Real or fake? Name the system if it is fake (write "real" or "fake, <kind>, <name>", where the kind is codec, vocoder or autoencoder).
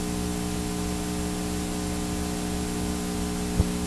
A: real